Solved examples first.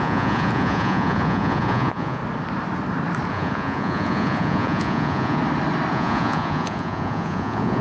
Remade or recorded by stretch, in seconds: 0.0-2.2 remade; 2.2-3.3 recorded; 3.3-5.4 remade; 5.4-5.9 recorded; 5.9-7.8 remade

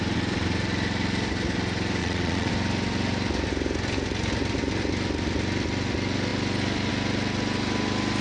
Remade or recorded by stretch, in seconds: 0.0-2.0 recorded; 2.0-2.5 remade; 2.5-8.2 recorded

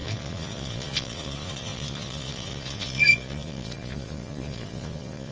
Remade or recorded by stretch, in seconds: 0.0-5.3 remade

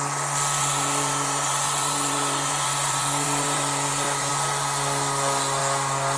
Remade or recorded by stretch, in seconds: 0.0-0.6 recorded; 0.6-4.3 remade; 4.3-6.2 recorded

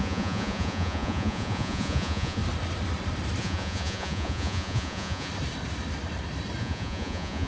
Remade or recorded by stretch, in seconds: 0.0-2.4 remade; 2.4-3.4 recorded; 3.4-5.3 remade; 5.3-6.6 recorded; 6.6-7.5 remade

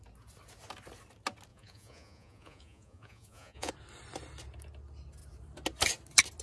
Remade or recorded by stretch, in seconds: 0.0-1.5 recorded; 1.5-3.7 remade; 3.7-6.4 recorded

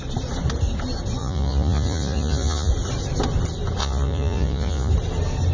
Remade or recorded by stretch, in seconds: 0.0-1.2 recorded; 1.2-2.7 remade; 2.7-3.8 recorded; 3.8-4.9 remade; 4.9-5.5 recorded

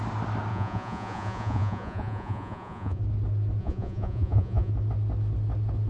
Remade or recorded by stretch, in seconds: 0.0-0.5 recorded; 0.5-3.0 remade; 3.0-3.6 recorded; 3.6-4.7 remade; 4.7-5.9 recorded